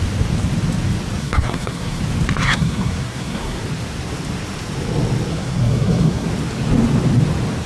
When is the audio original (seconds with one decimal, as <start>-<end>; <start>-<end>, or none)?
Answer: 0.0-1.2; 2.0-2.4; 3.6-5.3; 6.3-7.7